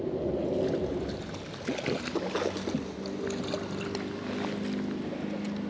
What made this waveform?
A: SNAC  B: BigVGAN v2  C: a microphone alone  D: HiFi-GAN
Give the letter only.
C